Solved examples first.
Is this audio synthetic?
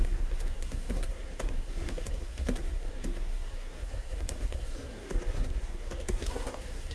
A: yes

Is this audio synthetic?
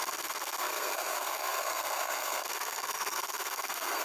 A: yes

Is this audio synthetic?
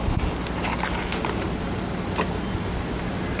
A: no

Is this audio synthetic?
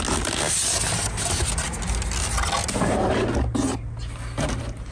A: no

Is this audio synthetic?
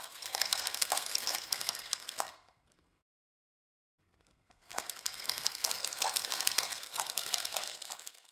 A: yes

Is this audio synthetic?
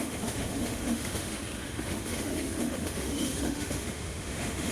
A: yes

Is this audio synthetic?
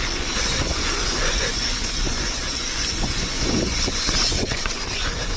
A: yes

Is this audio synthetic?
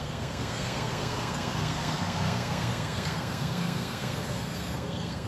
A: yes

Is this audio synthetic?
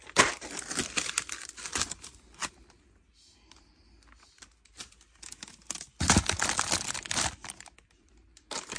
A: no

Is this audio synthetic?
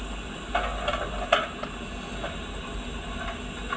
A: no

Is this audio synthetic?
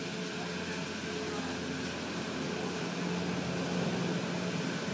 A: no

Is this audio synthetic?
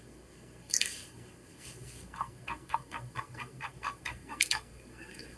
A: yes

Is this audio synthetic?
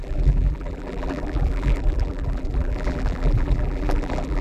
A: yes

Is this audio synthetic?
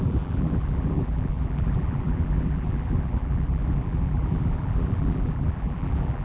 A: yes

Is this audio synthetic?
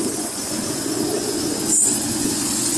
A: yes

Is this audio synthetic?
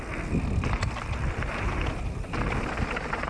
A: no